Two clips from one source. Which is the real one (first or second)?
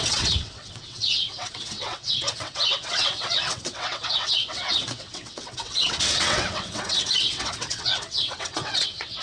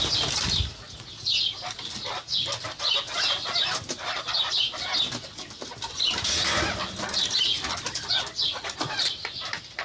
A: second